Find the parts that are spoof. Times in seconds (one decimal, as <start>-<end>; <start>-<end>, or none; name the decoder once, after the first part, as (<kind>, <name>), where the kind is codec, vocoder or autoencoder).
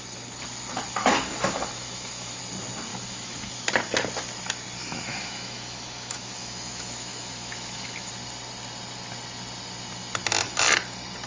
1.0-2.4 (autoencoder, DAC-VAE); 2.9-3.5; 4.8-8.1